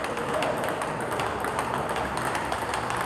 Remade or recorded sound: recorded